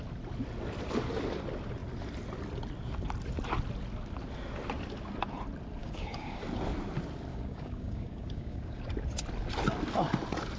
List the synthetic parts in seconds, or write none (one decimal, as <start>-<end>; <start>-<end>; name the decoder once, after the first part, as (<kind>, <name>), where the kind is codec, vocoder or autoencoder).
5.8-6.4 (codec, DAC); 7.3-8.8